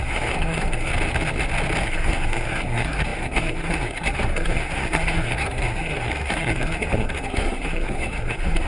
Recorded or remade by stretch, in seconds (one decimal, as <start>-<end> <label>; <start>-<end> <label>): 0.0-0.9 remade; 0.9-1.8 recorded; 1.8-8.7 remade